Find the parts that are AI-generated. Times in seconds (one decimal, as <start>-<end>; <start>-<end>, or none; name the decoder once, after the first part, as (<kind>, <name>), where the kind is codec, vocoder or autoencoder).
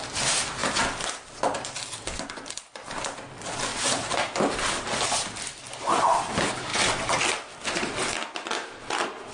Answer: none